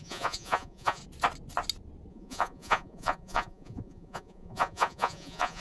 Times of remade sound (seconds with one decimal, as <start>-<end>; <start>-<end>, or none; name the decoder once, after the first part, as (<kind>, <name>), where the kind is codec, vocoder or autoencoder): 0.0-1.0 (vocoder, Vocos); 2.1-5.6